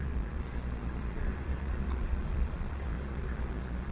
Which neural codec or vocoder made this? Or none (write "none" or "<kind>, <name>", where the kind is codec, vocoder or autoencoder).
vocoder, Vocos